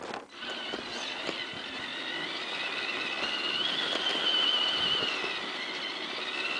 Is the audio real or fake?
real